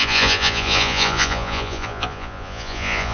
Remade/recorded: remade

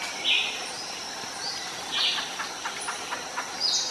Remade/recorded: recorded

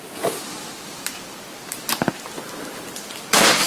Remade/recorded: recorded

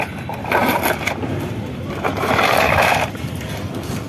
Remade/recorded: recorded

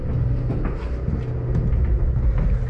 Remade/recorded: recorded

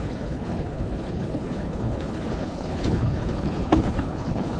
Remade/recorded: remade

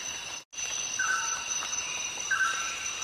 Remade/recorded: recorded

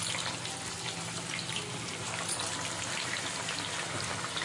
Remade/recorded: recorded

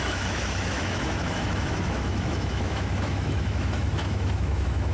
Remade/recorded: remade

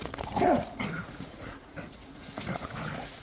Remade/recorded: remade